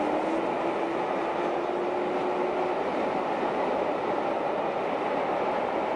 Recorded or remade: recorded